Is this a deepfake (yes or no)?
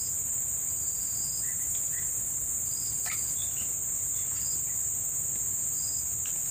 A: no